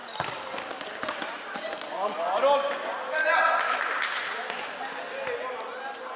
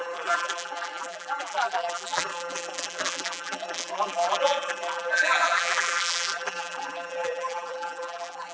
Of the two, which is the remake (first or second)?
second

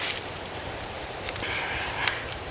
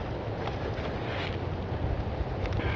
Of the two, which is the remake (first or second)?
first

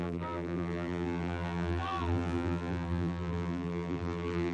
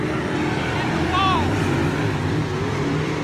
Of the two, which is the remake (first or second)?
first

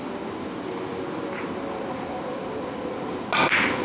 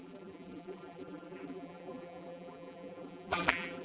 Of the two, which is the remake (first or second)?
second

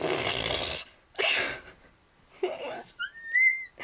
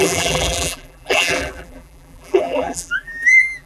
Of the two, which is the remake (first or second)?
second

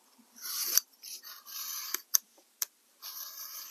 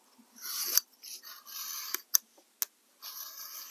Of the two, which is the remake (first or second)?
first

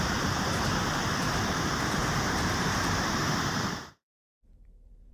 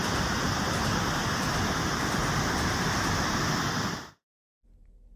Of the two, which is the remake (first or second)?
first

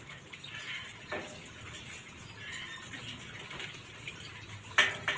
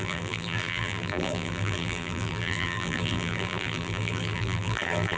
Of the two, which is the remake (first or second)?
second